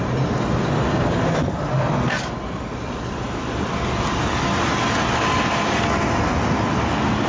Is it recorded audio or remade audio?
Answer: recorded